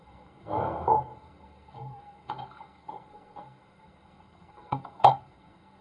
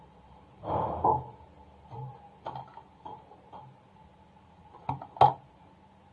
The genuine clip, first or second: second